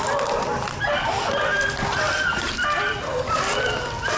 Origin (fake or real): real